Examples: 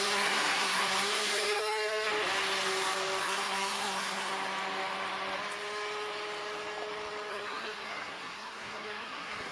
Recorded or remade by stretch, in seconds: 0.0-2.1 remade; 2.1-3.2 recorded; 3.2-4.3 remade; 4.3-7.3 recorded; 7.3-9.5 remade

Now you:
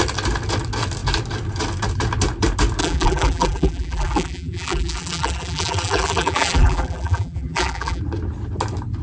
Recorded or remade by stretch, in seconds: 0.0-2.8 recorded; 2.8-8.0 remade; 8.0-9.0 recorded

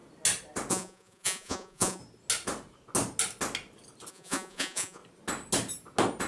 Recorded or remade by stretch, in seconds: 0.0-0.7 recorded; 0.7-2.0 remade; 2.0-4.1 recorded; 4.1-5.0 remade; 5.0-6.3 recorded

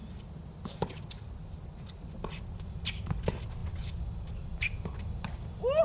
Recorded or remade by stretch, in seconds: 0.0-5.8 recorded

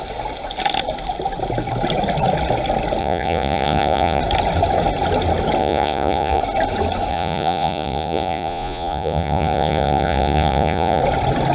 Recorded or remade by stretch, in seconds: 0.0-3.0 recorded; 3.0-4.2 remade; 4.2-5.6 recorded; 5.6-6.4 remade; 6.4-7.1 recorded; 7.1-11.0 remade; 11.0-11.5 recorded